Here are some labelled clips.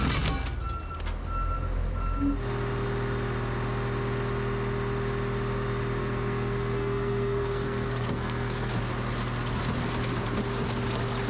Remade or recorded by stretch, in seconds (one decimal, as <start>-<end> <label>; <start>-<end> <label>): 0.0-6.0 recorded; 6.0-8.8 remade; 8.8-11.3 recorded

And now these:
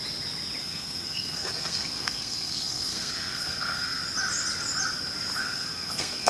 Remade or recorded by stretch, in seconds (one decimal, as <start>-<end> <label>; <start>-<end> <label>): 0.0-0.6 recorded; 0.6-4.0 remade; 4.0-5.4 recorded; 5.4-6.3 remade

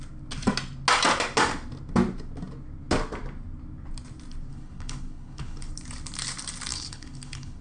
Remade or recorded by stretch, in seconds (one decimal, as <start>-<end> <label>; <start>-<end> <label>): 0.0-4.5 recorded; 4.5-5.7 remade; 5.7-6.7 recorded; 6.7-7.6 remade

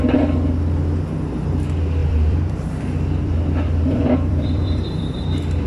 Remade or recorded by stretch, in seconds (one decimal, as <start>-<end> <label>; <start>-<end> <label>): 0.0-2.0 recorded; 2.0-5.7 remade

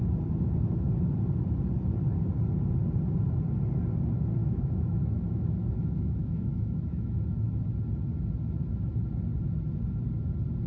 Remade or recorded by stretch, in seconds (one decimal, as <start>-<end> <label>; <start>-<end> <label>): 0.0-4.4 recorded; 4.4-7.6 remade; 7.6-10.7 recorded

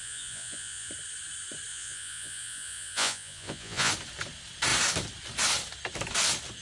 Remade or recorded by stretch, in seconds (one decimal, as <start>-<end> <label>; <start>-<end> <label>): 0.0-0.9 remade; 0.9-1.7 recorded; 1.7-3.9 remade; 3.9-6.6 recorded